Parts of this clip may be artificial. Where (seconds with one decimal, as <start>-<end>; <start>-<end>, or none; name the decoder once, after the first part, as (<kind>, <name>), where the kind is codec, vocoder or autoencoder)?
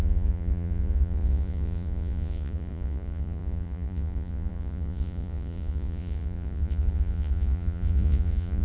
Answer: 0.0-8.6 (vocoder, Vocos)